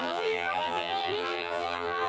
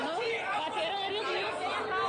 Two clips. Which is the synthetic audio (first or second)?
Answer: first